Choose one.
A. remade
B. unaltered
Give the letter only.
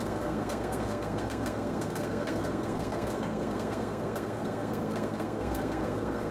A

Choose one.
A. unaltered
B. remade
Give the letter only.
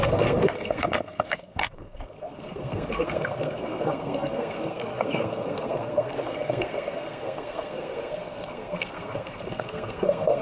B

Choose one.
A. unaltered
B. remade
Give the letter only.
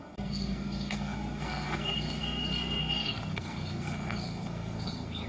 B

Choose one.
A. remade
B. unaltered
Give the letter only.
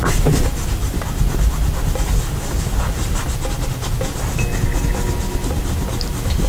B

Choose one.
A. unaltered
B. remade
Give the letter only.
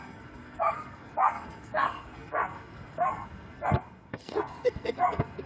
B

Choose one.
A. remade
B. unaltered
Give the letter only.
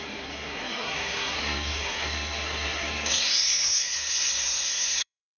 A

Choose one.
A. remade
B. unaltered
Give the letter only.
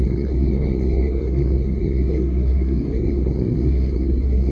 A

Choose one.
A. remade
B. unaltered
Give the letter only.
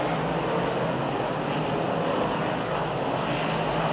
B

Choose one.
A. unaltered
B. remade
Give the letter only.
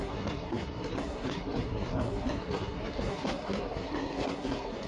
B